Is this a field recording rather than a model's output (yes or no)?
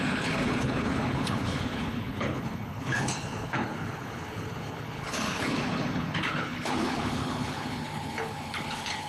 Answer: no